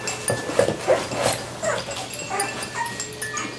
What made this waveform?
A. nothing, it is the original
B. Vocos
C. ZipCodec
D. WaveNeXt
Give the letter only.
A